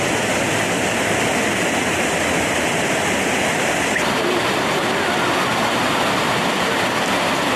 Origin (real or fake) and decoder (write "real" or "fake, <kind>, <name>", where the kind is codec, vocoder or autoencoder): real